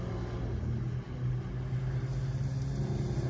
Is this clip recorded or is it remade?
recorded